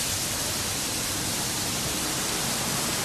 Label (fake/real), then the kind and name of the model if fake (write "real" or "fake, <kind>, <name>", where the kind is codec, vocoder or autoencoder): fake, vocoder, BigVGAN v2